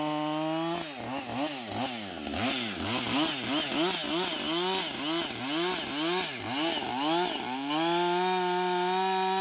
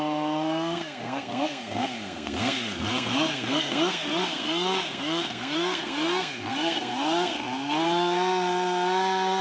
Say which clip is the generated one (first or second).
second